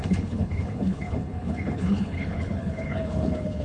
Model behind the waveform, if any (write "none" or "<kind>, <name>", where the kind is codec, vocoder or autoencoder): codec, HILCodec